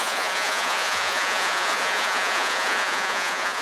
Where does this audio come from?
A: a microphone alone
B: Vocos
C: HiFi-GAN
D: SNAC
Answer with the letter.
B